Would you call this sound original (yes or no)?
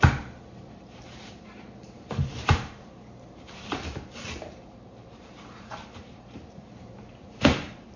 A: no